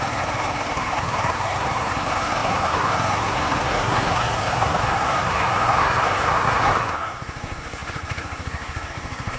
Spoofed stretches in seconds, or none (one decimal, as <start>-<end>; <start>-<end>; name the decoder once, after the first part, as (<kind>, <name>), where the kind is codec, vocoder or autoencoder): 0.0-9.4 (codec, SNAC)